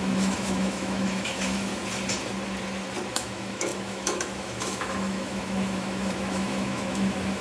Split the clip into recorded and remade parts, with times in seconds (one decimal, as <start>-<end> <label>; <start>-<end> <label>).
0.0-1.7 remade; 1.7-3.1 recorded; 3.1-7.4 remade